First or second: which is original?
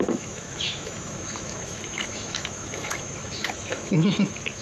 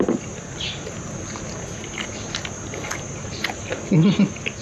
second